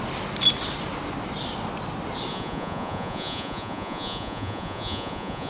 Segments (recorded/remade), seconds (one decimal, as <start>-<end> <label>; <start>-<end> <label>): 0.0-2.3 recorded; 2.3-5.5 remade